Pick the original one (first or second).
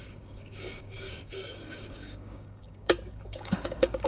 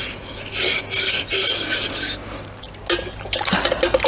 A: second